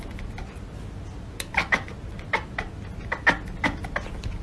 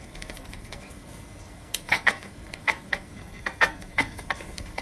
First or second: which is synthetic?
second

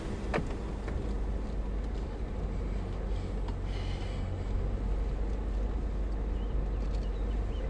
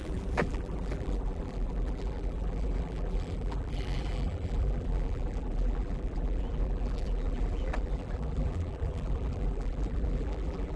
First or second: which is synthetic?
second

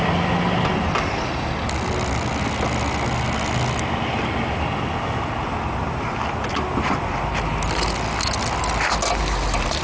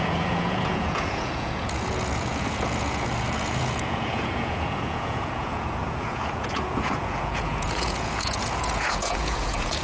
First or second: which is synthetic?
second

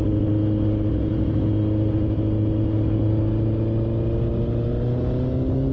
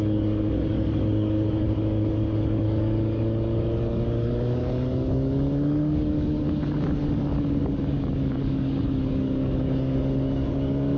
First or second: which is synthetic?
second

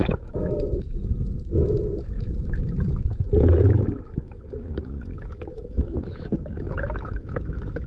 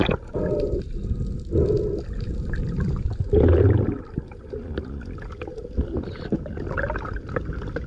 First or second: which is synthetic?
first